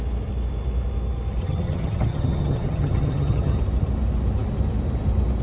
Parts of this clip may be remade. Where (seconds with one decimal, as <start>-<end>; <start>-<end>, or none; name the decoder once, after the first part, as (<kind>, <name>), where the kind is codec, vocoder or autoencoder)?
1.4-3.6 (vocoder, HiFi-GAN)

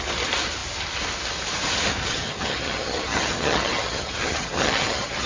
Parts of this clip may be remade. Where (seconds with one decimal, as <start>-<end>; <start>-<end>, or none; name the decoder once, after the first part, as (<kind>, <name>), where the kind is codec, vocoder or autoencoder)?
2.0-5.3 (vocoder, HiFi-GAN)

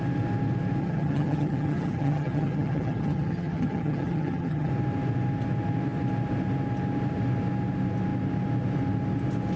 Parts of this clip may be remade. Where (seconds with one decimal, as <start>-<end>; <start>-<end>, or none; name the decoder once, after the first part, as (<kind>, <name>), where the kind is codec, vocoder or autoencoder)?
0.8-4.7 (vocoder, HiFi-GAN)

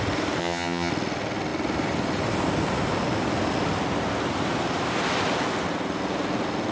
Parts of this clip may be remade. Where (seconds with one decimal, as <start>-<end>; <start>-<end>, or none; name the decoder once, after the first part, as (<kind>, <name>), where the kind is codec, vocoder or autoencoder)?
0.4-0.9 (vocoder, HiFi-GAN)

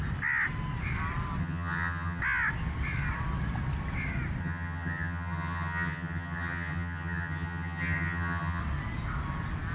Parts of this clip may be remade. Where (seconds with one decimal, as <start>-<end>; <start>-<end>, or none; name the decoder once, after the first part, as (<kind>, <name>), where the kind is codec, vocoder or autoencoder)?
1.4-2.2 (vocoder, HiFi-GAN); 4.4-8.6

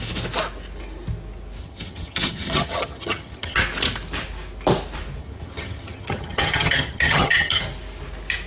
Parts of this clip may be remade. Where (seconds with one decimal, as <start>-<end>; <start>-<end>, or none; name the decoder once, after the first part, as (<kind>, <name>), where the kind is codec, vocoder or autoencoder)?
1.6-3.6 (vocoder, HiFi-GAN); 5.2-7.6

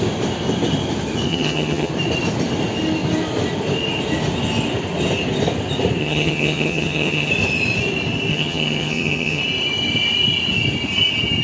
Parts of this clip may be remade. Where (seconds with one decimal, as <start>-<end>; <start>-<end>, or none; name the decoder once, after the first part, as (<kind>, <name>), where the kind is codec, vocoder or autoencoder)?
1.3-1.9 (vocoder, HiFi-GAN); 6.0-7.3; 8.3-9.4

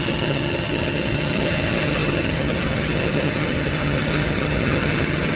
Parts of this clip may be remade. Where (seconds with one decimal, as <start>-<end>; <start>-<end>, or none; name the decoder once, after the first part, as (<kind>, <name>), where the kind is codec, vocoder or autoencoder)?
0.0-5.4 (vocoder, HiFi-GAN)